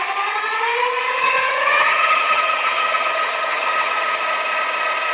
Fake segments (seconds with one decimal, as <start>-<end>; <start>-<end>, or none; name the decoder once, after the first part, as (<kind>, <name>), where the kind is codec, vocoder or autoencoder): 1.1-4.2 (vocoder, HiFi-GAN)